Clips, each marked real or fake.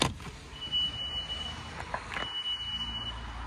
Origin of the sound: real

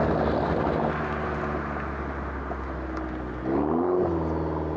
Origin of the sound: real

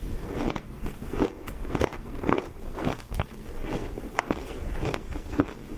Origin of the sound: fake